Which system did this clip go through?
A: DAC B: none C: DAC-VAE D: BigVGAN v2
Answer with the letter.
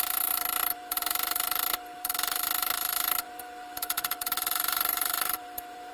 D